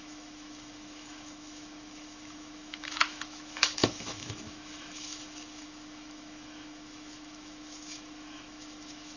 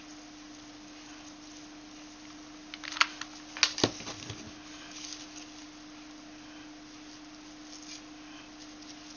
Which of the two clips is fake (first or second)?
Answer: first